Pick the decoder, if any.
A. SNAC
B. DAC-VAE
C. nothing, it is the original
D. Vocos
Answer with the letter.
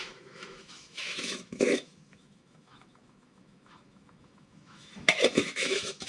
B